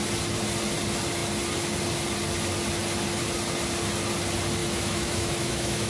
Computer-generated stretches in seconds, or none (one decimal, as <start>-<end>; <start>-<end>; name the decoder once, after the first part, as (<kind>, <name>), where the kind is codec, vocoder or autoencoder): 4.6-5.9 (autoencoder, DAC-VAE)